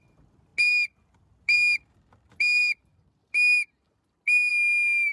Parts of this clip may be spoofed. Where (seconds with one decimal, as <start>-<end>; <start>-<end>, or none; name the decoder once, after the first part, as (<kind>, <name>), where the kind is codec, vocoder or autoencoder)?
none